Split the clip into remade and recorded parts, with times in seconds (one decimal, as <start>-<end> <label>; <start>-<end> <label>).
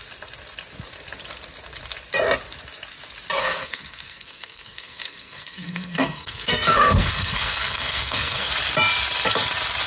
0.0-3.4 recorded; 3.4-8.5 remade; 8.5-9.9 recorded